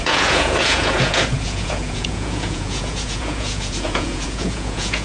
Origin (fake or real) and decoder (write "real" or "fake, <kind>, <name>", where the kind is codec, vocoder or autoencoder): fake, vocoder, Vocos